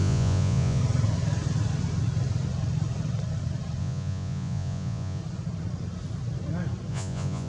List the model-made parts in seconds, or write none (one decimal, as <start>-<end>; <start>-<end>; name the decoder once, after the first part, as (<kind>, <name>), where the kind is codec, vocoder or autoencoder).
0.0-0.8 (vocoder, Vocos); 3.8-5.2; 6.9-7.5